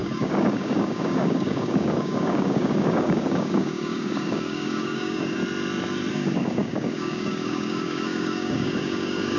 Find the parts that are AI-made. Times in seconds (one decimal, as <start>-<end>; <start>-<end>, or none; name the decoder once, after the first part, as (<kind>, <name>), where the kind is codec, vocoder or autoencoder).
0.0-5.4 (codec, DAC); 6.1-9.4